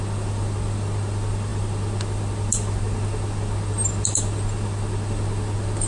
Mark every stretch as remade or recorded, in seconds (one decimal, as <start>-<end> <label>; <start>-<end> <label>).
0.0-5.9 recorded